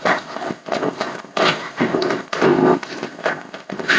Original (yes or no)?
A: no